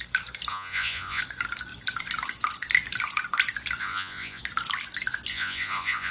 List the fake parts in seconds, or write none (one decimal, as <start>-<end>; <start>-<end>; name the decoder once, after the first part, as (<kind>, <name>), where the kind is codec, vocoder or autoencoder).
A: 0.5-1.2 (vocoder, Vocos); 3.8-4.4; 5.3-6.1

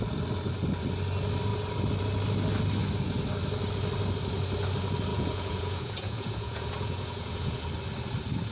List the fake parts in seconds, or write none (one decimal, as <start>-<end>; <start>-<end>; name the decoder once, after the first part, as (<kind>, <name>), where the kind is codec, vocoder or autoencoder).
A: 5.1-7.7 (vocoder, Vocos)

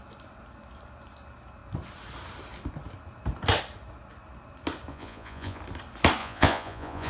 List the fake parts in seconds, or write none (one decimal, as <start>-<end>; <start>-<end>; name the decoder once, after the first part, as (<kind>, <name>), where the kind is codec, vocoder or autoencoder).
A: 4.9-5.6 (vocoder, Vocos); 6.2-7.1

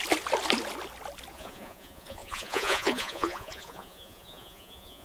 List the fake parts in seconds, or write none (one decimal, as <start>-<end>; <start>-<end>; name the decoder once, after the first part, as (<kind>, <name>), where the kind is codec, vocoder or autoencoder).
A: 1.3-5.0 (vocoder, Vocos)

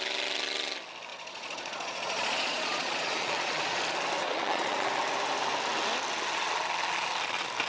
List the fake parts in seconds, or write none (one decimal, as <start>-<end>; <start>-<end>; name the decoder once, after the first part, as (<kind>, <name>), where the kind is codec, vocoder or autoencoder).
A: 1.1-3.8 (vocoder, Vocos); 4.2-4.9